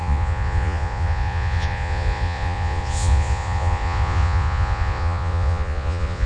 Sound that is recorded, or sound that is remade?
remade